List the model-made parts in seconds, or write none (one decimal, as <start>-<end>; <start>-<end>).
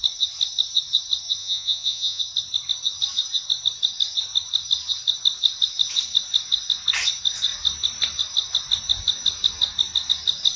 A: 1.4-2.2